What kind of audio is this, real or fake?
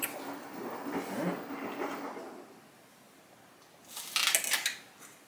real